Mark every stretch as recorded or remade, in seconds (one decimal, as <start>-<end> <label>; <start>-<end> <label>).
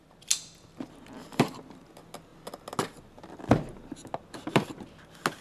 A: 0.0-5.4 recorded